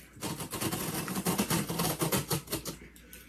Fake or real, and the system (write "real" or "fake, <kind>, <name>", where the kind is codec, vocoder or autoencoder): real